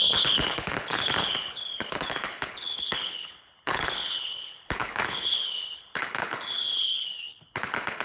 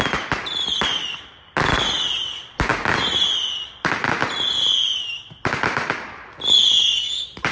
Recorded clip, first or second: second